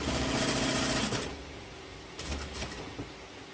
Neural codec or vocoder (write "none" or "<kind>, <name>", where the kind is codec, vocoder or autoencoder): none